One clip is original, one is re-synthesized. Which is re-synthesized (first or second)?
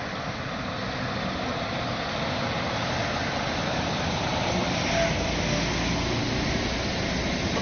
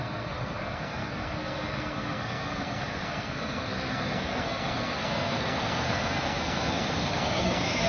second